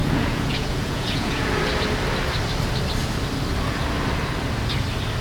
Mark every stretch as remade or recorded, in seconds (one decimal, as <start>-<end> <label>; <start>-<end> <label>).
0.0-1.6 remade; 1.6-5.2 recorded